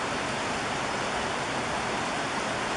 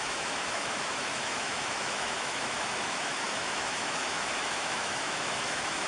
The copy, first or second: second